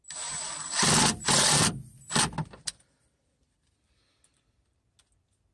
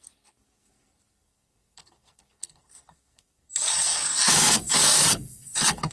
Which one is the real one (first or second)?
first